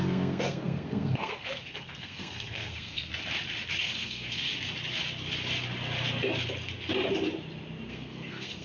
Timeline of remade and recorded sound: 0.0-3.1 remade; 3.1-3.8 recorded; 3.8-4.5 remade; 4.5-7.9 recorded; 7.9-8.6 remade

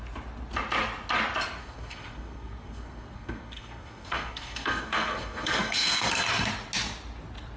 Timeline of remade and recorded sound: 0.0-1.6 recorded; 1.6-6.2 remade; 6.2-7.6 recorded

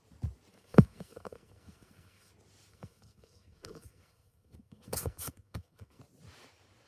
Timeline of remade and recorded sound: 0.0-0.5 recorded; 0.5-2.3 remade; 2.3-2.7 recorded; 2.7-6.0 remade; 6.0-6.9 recorded